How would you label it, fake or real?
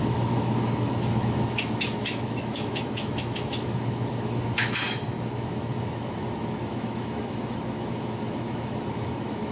fake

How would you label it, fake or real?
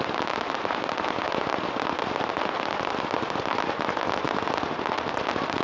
real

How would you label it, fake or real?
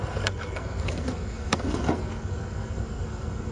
fake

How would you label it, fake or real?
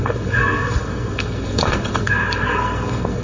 fake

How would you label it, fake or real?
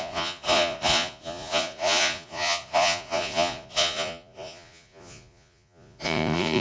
fake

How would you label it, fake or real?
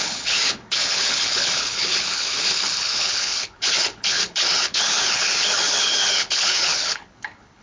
fake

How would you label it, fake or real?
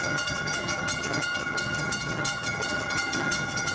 fake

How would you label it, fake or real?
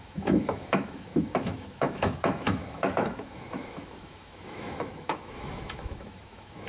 fake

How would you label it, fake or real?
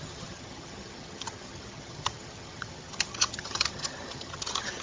fake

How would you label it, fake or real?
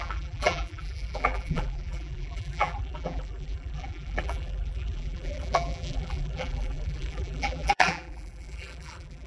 fake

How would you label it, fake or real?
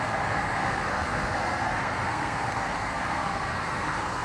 fake